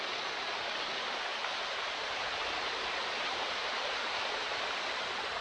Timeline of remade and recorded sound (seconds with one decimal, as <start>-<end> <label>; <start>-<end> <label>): 0.0-1.3 recorded; 1.3-4.5 remade; 4.5-5.4 recorded